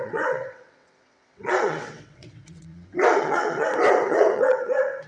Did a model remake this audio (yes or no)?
yes